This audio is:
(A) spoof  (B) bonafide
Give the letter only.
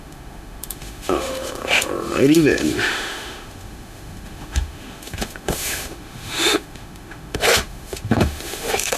A